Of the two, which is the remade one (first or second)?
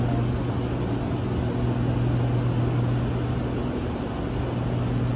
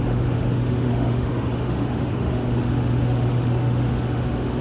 second